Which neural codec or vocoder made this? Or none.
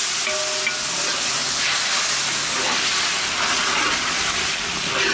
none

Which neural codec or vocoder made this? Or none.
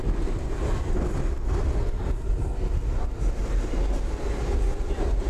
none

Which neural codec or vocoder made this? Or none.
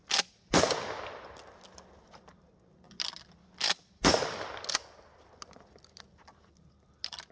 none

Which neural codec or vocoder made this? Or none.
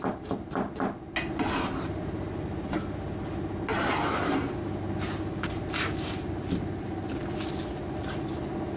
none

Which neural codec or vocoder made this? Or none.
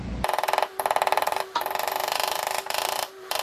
vocoder, BigVGAN v2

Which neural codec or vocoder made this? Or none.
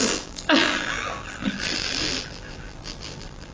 vocoder, BigVGAN v2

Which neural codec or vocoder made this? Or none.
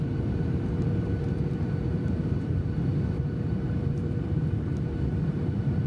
vocoder, BigVGAN v2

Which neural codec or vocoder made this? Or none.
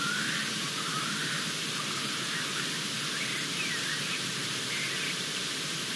vocoder, BigVGAN v2